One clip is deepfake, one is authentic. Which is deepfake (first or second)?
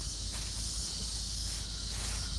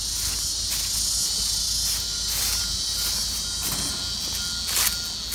first